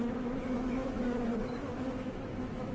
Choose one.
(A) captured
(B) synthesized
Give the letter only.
B